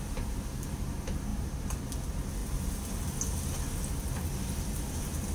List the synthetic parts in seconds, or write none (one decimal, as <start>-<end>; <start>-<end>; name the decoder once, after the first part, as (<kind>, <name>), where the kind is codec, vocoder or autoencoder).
1.3-1.8 (vocoder, BigVGAN v2)